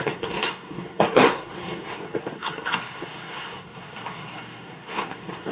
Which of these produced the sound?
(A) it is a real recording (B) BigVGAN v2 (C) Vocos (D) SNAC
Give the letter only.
D